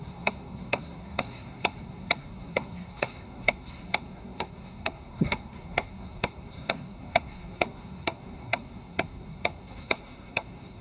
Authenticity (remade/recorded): remade